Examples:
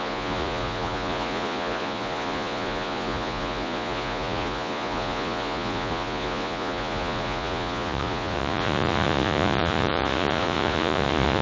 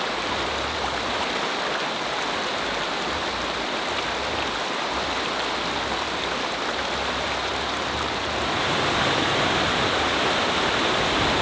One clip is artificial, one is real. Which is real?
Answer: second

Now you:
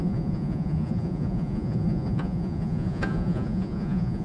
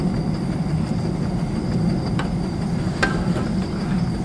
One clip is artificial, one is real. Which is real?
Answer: second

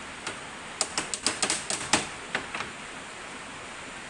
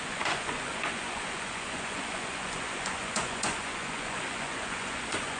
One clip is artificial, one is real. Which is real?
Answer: first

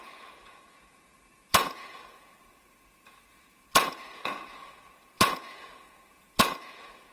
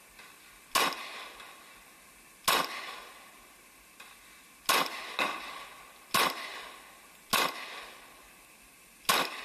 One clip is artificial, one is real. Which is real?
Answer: second